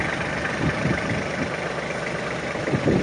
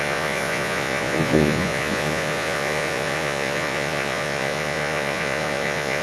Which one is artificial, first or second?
second